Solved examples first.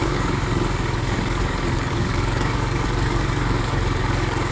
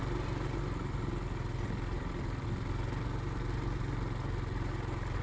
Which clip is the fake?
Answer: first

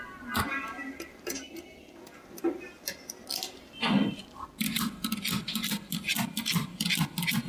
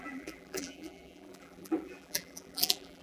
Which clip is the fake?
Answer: second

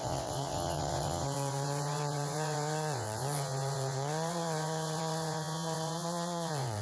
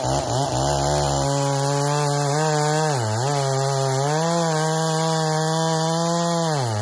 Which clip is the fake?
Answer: first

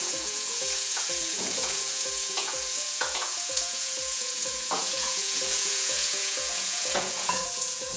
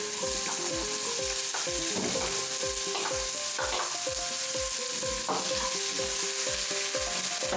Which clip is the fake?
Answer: first